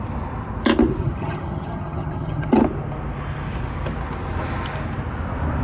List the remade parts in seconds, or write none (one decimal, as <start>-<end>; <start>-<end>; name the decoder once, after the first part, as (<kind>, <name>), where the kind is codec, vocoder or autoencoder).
1.0-2.5 (vocoder, HiFi-GAN)